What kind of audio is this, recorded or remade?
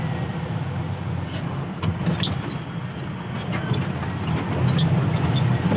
recorded